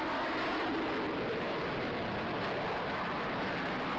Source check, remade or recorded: recorded